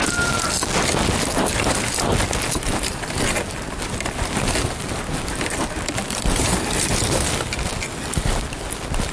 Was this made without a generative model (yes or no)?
yes